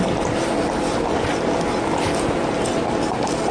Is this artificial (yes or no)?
no